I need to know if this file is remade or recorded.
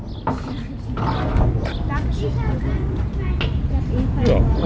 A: recorded